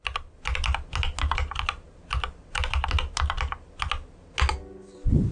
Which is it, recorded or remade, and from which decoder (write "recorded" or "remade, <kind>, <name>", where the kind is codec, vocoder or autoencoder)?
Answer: recorded